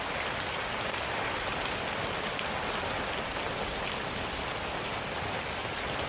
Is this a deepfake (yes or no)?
no